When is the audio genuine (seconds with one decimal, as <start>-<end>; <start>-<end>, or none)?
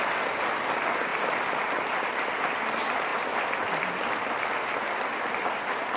1.1-2.7; 3.1-5.3